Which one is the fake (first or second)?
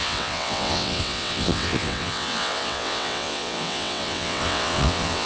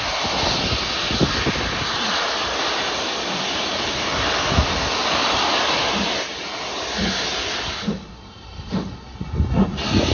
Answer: first